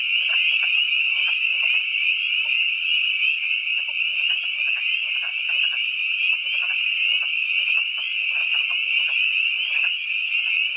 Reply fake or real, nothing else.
real